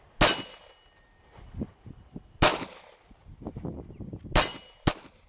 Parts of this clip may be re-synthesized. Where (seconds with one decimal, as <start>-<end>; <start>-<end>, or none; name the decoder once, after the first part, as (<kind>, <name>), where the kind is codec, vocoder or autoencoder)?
none